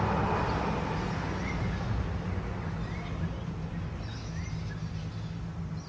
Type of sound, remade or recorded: recorded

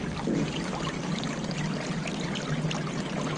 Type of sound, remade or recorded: recorded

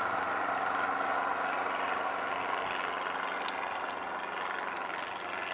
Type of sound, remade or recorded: recorded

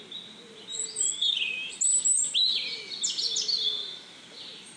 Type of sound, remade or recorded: recorded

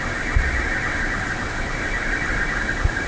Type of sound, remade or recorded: recorded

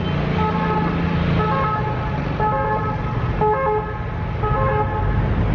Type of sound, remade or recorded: recorded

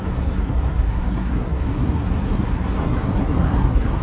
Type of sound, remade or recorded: remade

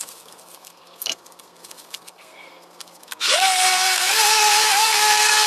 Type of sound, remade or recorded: remade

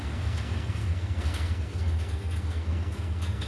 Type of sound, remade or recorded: remade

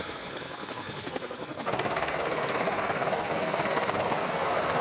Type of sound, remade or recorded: remade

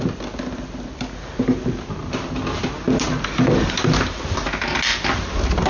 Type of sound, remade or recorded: recorded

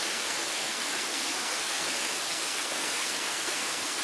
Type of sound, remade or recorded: remade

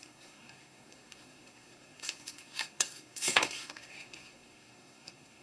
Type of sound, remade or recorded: remade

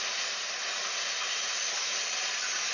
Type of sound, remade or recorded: recorded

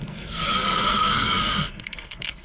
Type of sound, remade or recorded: remade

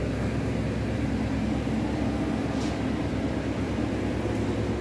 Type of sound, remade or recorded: recorded